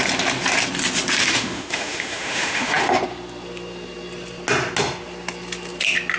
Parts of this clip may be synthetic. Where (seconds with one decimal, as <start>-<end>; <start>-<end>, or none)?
1.2-2.8